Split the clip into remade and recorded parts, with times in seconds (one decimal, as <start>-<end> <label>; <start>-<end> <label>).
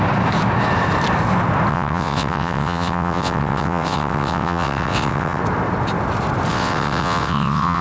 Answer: 0.0-1.7 recorded; 1.7-5.4 remade; 5.4-6.5 recorded; 6.5-7.8 remade